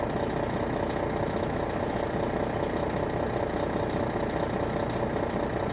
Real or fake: real